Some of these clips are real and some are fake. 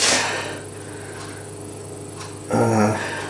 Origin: real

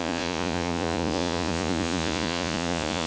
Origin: fake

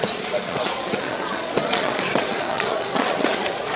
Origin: fake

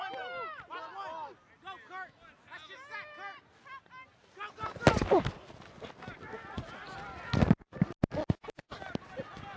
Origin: real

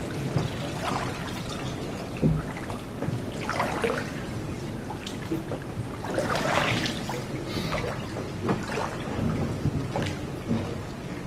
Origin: real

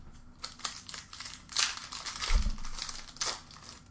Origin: real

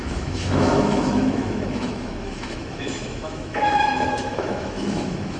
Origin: fake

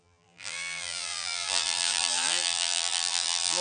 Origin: fake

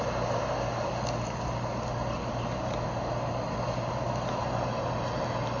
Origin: real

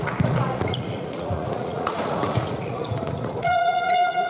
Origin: fake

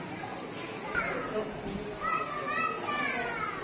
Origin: real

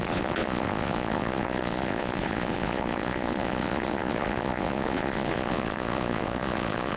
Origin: fake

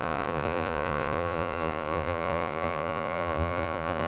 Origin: fake